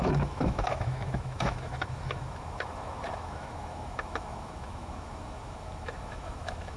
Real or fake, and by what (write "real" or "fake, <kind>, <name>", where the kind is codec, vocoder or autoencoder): fake, autoencoder, DAC-VAE